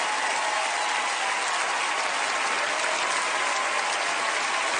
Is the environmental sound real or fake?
real